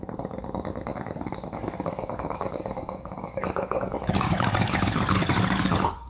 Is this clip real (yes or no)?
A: no